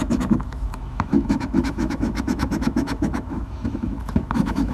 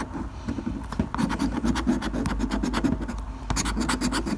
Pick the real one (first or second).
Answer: second